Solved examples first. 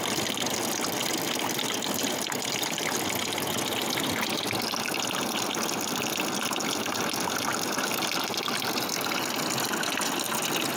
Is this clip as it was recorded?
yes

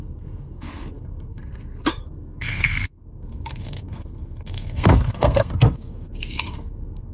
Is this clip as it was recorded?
no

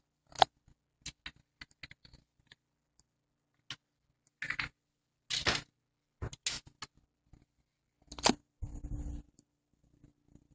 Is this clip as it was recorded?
yes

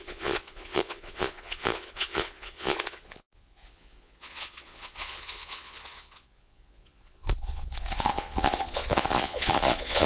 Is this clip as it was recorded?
no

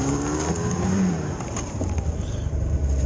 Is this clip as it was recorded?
no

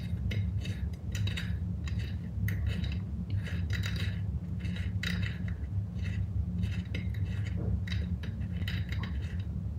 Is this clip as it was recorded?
yes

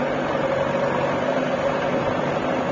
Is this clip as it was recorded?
yes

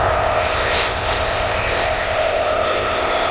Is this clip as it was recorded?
no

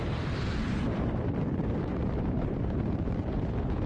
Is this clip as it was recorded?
no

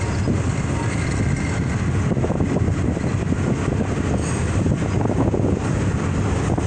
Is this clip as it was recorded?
yes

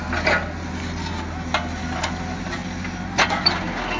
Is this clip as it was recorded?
yes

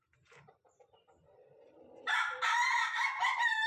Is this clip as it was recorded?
no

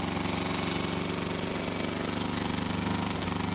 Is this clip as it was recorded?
yes